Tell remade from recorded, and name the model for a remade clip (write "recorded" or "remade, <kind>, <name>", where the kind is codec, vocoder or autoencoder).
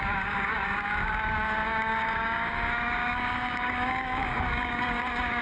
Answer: remade, codec, DAC